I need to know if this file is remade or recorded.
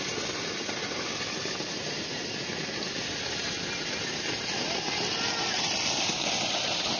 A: recorded